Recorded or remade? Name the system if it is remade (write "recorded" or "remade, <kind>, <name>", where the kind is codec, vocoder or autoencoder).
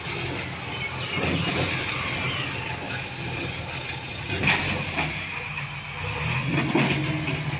recorded